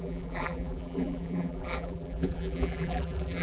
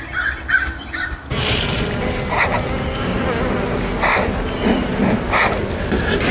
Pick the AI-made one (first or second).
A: first